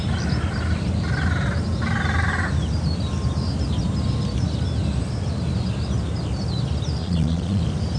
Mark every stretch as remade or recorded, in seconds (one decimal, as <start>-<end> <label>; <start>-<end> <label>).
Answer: 0.0-7.0 recorded; 7.0-7.6 remade; 7.6-8.0 recorded